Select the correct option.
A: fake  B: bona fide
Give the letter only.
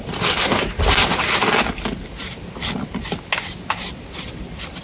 B